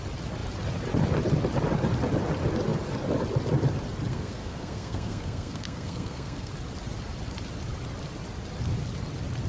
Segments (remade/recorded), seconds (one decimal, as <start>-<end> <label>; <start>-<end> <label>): 0.0-4.1 recorded; 4.1-6.5 remade; 6.5-9.5 recorded